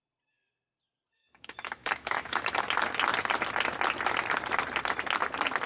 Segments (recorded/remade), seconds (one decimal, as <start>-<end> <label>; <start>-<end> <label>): 0.0-1.2 recorded; 1.2-2.6 remade; 2.6-5.7 recorded